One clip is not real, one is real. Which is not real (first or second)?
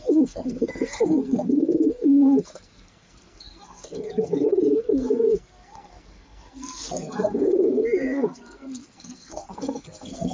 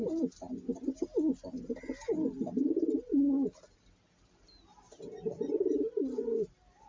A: first